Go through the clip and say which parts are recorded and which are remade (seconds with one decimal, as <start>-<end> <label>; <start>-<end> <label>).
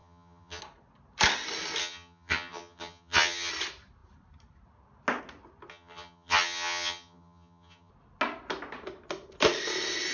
0.0-0.6 remade; 0.6-1.8 recorded; 1.8-3.5 remade; 3.5-5.7 recorded; 5.7-7.9 remade; 7.9-10.1 recorded